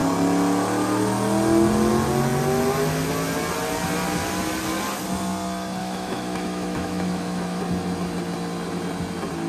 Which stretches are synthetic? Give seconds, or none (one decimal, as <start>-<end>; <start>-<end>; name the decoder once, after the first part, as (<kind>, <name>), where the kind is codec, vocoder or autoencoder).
5.8-7.6 (autoencoder, DAC-VAE)